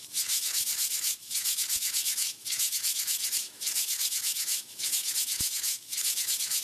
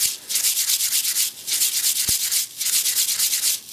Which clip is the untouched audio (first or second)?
second